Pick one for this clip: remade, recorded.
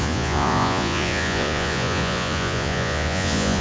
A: remade